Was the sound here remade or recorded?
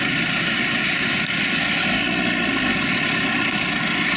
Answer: recorded